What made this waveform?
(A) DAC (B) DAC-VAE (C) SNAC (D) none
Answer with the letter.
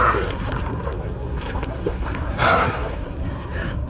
C